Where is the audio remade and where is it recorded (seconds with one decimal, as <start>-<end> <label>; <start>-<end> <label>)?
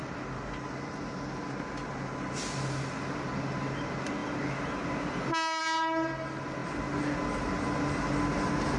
0.0-8.8 recorded